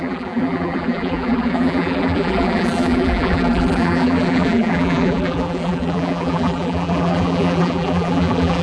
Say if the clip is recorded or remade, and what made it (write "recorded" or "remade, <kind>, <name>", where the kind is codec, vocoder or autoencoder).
remade, vocoder, BigVGAN v2